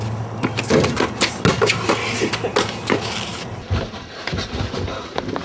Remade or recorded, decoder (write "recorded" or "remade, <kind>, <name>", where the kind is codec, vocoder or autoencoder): recorded